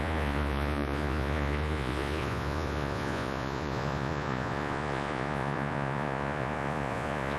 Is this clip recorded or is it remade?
remade